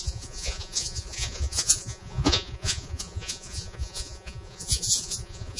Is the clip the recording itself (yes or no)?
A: no